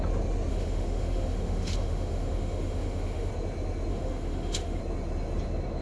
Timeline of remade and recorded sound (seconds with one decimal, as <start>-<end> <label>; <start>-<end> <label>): 0.0-0.5 recorded; 0.5-3.3 remade; 3.3-3.9 recorded; 3.9-4.8 remade; 4.8-5.8 recorded